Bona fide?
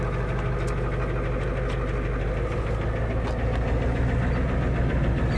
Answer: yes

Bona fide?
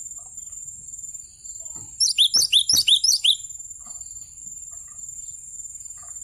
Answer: yes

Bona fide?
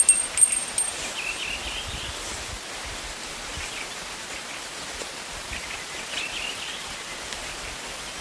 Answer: yes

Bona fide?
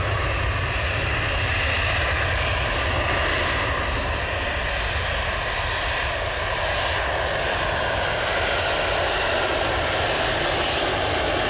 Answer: yes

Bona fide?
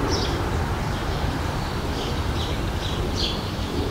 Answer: no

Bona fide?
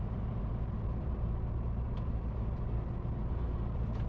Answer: no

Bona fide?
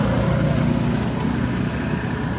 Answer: yes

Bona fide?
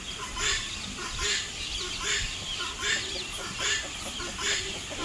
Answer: yes